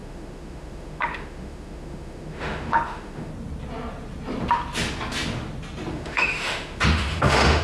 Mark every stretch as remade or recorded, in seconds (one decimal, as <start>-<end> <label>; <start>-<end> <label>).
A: 0.0-3.3 remade; 3.3-5.9 recorded; 5.9-7.6 remade